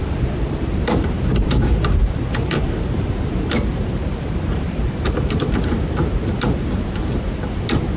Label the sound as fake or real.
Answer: fake